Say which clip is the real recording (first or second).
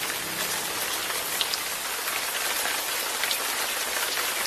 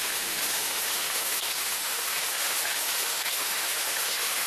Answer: first